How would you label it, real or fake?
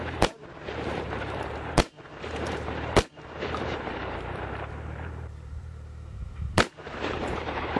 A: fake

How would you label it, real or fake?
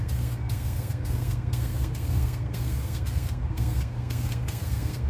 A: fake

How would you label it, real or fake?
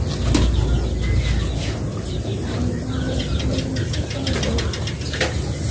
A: real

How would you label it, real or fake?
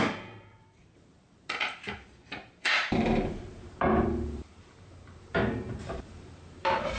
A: fake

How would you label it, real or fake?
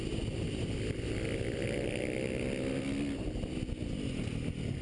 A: real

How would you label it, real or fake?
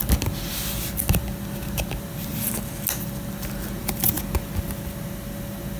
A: real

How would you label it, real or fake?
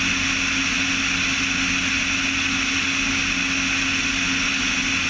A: real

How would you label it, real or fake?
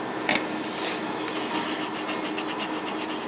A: real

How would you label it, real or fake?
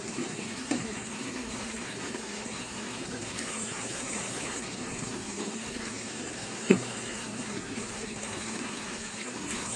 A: fake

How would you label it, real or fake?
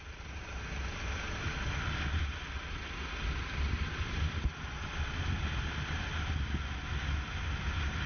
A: real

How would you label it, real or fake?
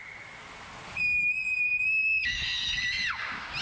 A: real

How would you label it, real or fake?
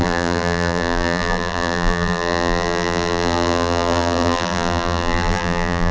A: fake